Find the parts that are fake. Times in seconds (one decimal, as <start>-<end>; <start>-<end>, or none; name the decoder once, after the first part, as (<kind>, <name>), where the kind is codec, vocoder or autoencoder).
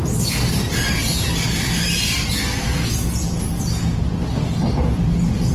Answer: none